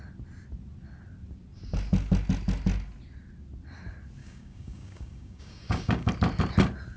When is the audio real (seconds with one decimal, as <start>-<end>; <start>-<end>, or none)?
0.0-4.2; 6.1-7.0

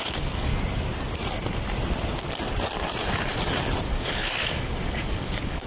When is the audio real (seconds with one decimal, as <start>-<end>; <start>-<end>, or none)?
0.5-3.9

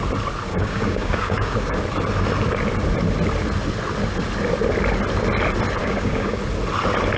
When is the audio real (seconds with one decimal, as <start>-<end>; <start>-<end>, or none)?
0.0-0.5; 1.8-5.8; 6.4-7.2

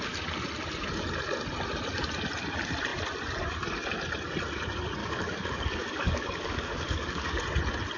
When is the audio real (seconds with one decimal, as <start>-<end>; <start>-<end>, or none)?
0.0-5.0; 7.4-8.0

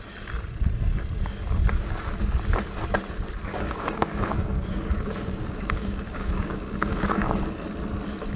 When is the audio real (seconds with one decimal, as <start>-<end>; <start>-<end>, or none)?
0.0-3.5; 7.4-8.4

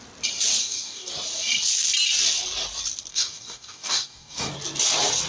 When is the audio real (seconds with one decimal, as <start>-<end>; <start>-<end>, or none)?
0.0-0.6; 1.1-3.1; 4.5-5.3

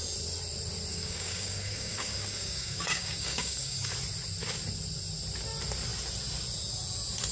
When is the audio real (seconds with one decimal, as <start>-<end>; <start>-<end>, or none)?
0.0-0.9; 3.9-7.3